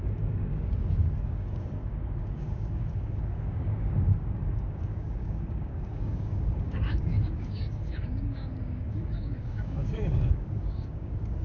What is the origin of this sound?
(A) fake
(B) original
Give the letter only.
A